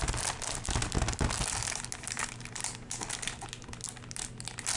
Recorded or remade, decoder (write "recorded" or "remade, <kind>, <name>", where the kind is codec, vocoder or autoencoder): recorded